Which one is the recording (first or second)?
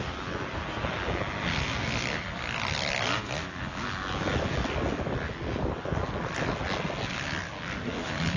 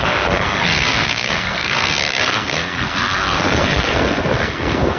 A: first